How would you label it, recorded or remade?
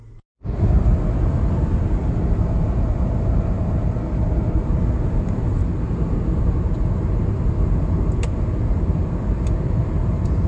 recorded